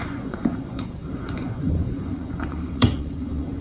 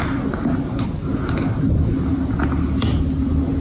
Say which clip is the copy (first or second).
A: first